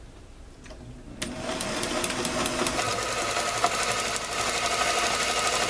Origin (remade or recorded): recorded